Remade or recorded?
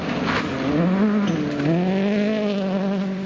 recorded